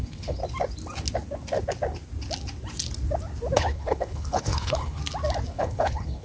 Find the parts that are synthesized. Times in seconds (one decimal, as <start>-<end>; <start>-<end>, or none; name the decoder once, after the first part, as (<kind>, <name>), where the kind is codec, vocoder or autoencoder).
0.0-0.4 (codec, HILCodec); 3.6-5.0; 5.5-6.2